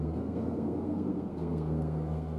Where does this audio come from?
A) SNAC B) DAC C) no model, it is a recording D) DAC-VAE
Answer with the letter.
A